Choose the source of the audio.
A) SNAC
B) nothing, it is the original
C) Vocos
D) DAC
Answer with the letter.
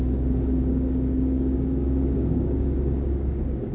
D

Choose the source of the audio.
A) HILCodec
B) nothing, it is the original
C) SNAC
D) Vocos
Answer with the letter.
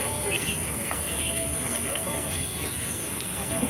C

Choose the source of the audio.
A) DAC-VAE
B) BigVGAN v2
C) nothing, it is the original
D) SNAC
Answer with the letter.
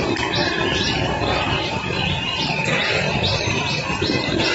C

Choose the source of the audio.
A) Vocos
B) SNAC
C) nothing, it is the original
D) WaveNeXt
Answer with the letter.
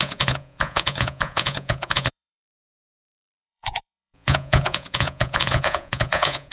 A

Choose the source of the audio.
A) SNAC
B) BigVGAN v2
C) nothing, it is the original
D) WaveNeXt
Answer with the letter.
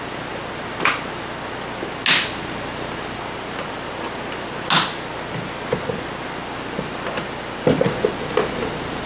C